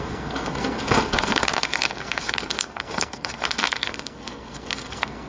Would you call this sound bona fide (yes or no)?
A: no